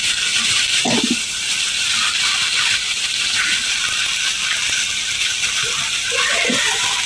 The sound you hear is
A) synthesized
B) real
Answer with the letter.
B